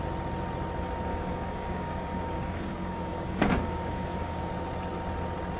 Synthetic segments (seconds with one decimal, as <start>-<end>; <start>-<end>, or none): 1.1-4.5